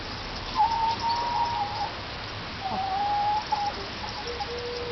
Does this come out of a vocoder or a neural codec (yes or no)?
no